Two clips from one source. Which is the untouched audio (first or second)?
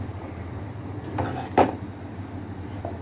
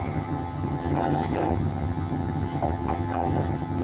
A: first